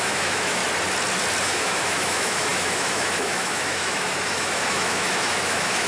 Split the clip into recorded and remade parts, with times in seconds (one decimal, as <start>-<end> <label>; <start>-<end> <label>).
0.0-0.6 remade; 0.6-1.4 recorded; 1.4-5.9 remade